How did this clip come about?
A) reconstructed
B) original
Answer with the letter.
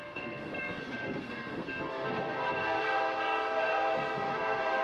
A